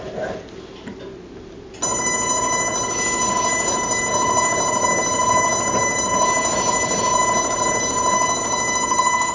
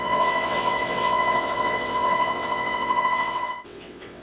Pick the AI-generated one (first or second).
second